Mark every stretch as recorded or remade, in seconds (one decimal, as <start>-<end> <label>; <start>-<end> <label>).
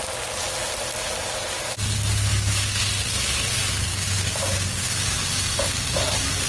0.0-2.3 recorded; 2.3-2.8 remade; 2.8-3.9 recorded; 3.9-5.2 remade; 5.2-6.5 recorded